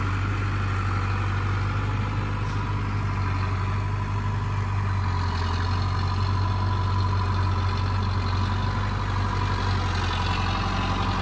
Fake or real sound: real